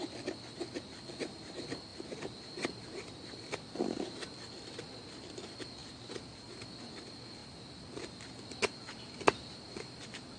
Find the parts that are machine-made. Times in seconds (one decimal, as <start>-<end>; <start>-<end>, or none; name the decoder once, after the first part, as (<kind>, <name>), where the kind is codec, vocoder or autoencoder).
none

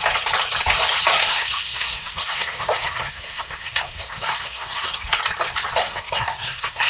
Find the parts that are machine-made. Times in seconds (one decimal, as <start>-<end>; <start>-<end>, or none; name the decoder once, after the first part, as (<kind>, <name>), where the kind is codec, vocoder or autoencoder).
1.1-5.2 (codec, SNAC); 5.8-6.9

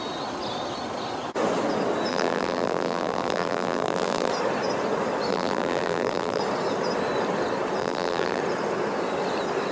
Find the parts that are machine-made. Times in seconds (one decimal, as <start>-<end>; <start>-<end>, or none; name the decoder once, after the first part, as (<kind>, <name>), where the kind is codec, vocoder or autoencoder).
2.1-4.3 (vocoder, BigVGAN v2); 5.3-6.4; 7.8-8.4

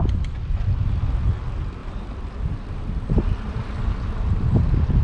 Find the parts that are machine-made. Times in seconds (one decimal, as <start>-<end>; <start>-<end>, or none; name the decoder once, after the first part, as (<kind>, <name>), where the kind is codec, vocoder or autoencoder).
1.8-5.0 (vocoder, BigVGAN v2)

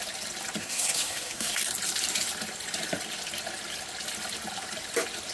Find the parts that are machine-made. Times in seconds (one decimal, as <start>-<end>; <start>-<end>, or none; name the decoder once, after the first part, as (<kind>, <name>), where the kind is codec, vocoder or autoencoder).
0.6-1.6 (codec, SNAC)

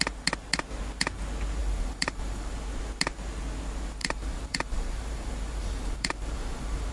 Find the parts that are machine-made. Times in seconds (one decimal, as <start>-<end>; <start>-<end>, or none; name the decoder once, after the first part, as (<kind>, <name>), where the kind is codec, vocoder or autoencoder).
1.6-2.5 (vocoder, BigVGAN v2); 4.0-6.9